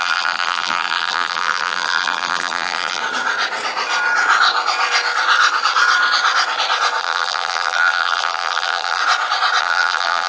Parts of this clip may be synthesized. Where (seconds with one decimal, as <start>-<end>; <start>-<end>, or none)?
0.0-3.0; 7.0-9.0; 9.6-10.3